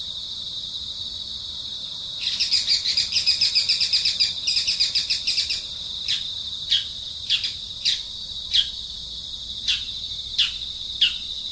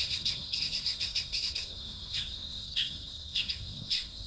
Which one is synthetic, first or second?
second